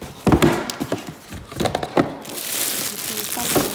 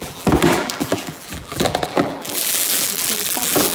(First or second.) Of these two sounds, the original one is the first